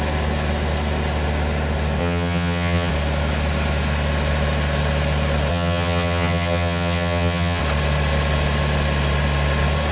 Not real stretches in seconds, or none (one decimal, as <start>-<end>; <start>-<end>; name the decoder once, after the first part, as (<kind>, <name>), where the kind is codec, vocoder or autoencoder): 2.0-2.9 (vocoder, HiFi-GAN); 5.5-7.6